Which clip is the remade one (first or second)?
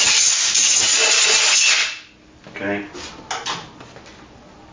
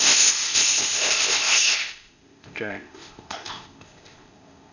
second